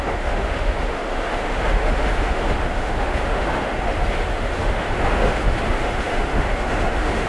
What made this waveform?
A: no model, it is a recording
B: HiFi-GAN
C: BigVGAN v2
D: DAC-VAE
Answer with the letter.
D